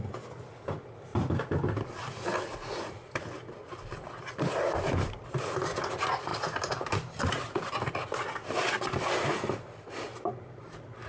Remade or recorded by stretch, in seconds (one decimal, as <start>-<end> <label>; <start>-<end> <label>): 0.0-1.1 recorded; 1.1-5.4 remade; 5.4-6.3 recorded; 6.3-7.3 remade; 7.3-11.1 recorded